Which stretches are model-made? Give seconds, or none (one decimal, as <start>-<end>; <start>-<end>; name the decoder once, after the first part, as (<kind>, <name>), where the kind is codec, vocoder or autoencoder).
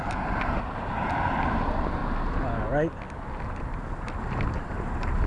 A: 0.0-2.0 (vocoder, BigVGAN v2); 4.6-5.3